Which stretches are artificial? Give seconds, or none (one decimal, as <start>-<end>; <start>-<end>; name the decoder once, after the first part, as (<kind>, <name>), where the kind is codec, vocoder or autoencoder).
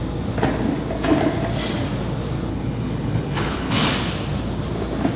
2.5-3.9 (codec, HILCodec)